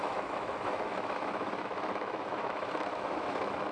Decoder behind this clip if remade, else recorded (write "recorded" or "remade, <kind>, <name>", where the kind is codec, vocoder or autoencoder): remade, autoencoder, DAC-VAE